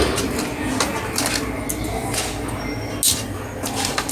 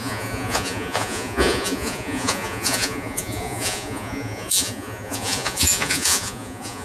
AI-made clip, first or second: second